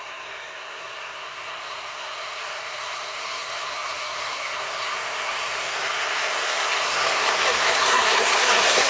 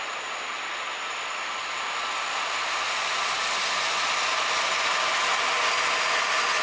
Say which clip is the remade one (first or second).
first